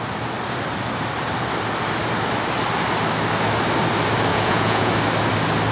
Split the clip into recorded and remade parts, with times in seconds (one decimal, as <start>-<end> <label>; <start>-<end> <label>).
0.0-4.3 recorded; 4.3-4.9 remade; 4.9-5.7 recorded